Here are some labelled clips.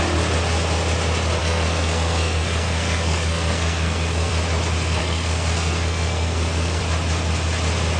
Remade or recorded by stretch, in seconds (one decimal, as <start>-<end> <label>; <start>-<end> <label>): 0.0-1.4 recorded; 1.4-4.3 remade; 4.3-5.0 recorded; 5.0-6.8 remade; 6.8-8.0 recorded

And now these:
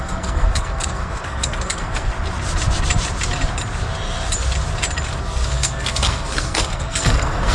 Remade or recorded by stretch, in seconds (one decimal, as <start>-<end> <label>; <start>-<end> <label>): 0.0-2.1 remade; 2.1-5.2 recorded; 5.2-7.5 remade

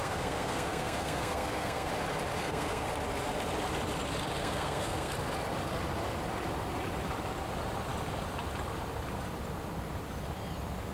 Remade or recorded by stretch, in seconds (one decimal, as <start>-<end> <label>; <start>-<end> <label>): 0.0-1.9 remade; 1.9-2.4 recorded; 2.4-2.9 remade; 2.9-4.4 recorded; 4.4-5.1 remade; 5.1-10.9 recorded

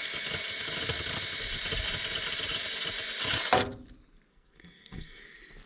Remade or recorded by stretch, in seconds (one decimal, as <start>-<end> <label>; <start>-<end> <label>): 0.0-4.3 recorded; 4.3-5.2 remade; 5.2-5.7 recorded

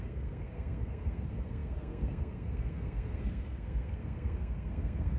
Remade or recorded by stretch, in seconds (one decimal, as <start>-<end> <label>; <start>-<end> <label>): 0.0-5.2 remade

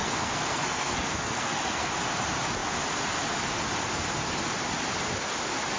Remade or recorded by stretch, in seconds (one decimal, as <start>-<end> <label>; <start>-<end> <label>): 0.0-1.9 remade; 1.9-5.8 recorded